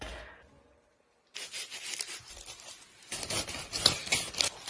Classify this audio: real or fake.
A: real